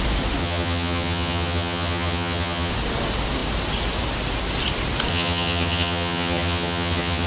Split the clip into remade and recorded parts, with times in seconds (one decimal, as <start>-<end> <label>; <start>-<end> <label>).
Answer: 0.0-0.4 recorded; 0.4-2.7 remade; 2.7-5.1 recorded; 5.1-7.3 remade